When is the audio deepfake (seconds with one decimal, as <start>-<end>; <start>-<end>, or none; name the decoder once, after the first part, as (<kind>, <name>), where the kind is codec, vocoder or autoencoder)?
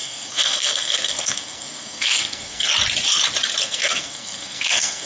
0.0-2.7 (codec, SNAC); 3.6-5.1